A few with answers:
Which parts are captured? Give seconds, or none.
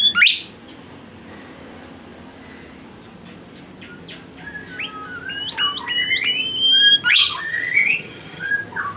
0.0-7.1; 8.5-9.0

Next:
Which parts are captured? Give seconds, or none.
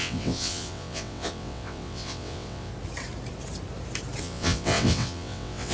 2.7-4.2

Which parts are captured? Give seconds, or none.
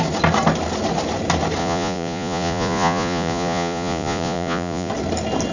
0.0-1.6; 4.9-5.5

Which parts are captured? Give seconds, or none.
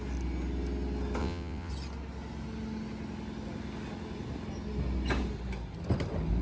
0.0-1.2; 1.7-6.4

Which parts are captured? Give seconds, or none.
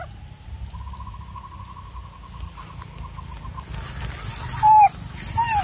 0.0-5.6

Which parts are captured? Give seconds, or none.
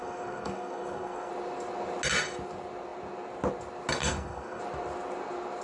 1.3-4.0; 4.6-5.6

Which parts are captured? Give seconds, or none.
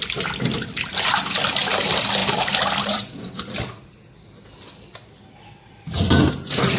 1.5-2.2; 6.3-6.8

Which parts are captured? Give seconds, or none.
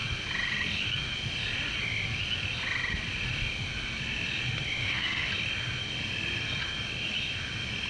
0.0-4.8; 5.3-7.9